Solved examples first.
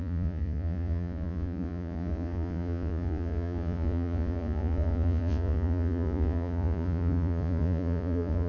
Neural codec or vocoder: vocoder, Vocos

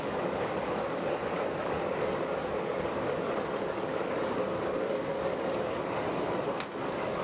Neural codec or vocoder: codec, DAC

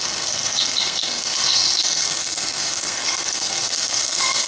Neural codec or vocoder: codec, SNAC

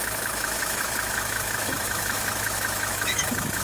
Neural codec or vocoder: autoencoder, DAC-VAE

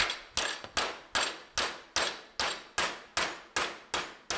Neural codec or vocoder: none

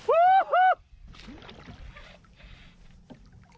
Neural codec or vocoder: none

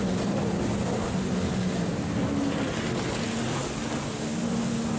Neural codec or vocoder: none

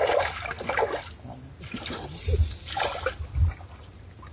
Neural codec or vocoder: none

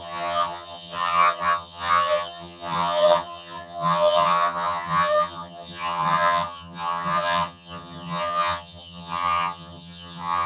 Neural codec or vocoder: vocoder, HiFi-GAN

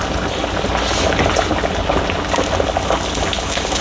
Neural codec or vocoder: none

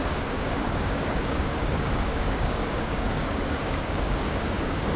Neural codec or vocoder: codec, DAC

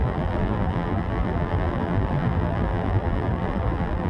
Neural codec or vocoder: vocoder, BigVGAN v2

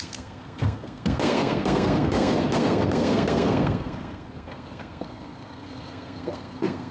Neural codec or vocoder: codec, SNAC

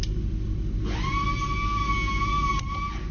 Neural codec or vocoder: none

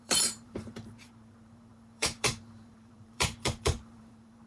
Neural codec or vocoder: vocoder, BigVGAN v2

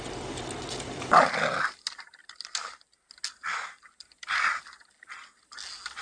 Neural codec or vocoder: none